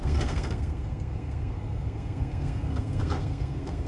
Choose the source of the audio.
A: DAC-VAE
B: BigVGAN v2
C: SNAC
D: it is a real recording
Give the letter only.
C